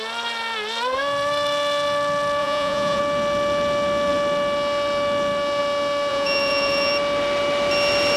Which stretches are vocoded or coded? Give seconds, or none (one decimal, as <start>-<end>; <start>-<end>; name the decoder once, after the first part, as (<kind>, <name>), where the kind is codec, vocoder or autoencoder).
2.4-3.0 (vocoder, Vocos); 6.1-6.9